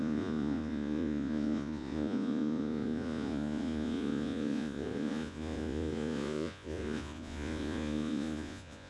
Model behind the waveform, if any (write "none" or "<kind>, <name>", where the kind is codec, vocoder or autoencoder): vocoder, Vocos